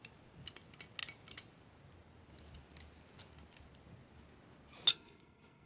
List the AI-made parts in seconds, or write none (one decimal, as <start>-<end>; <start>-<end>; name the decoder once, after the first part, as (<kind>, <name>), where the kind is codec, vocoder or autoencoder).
4.9-5.7 (codec, SNAC)